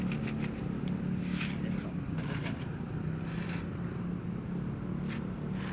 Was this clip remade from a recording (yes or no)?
no